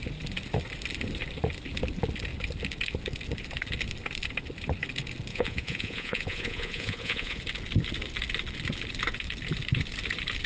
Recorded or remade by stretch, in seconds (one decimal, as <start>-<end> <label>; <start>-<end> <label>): 0.0-5.3 recorded; 5.3-7.4 remade; 7.4-10.5 recorded